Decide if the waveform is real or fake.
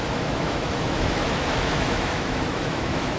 fake